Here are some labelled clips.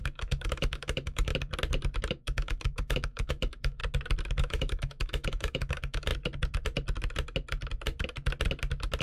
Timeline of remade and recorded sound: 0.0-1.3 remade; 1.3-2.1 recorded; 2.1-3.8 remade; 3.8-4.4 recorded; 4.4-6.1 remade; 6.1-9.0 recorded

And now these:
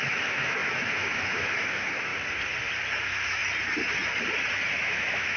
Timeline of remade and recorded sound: 0.0-2.1 remade; 2.1-3.0 recorded; 3.0-3.4 remade; 3.4-4.8 recorded; 4.8-5.4 remade

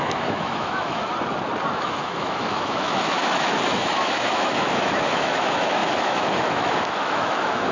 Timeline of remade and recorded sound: 0.0-1.0 remade; 1.0-1.7 recorded; 1.7-7.7 remade

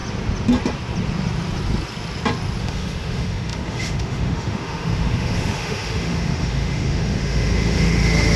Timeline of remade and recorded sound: 0.0-2.6 recorded; 2.6-8.4 remade

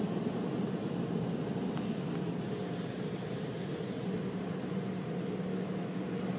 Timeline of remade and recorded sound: 0.0-5.5 recorded; 5.5-6.0 remade; 6.0-6.4 recorded

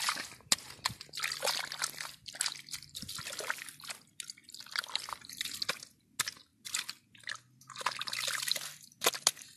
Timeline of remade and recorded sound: 0.0-9.6 recorded